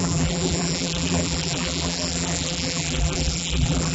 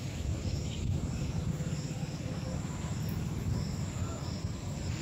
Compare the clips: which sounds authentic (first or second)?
second